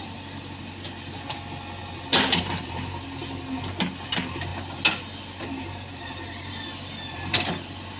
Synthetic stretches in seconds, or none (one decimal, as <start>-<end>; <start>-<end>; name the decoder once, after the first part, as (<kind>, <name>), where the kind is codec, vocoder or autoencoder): none